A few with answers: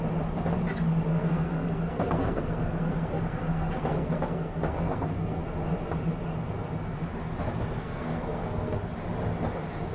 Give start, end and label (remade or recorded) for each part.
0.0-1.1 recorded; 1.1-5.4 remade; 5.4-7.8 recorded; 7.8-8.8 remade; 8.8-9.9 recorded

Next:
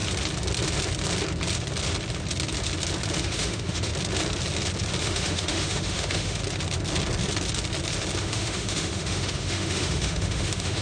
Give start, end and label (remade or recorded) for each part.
0.0-3.2 recorded; 3.2-3.9 remade; 3.9-5.0 recorded; 5.0-6.4 remade; 6.4-8.2 recorded; 8.2-10.8 remade

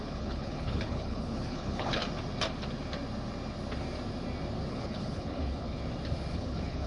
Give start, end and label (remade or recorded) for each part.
0.0-2.0 remade; 2.0-4.7 recorded; 4.7-5.8 remade; 5.8-6.3 recorded; 6.3-6.9 remade